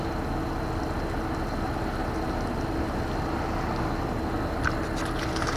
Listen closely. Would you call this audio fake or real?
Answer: real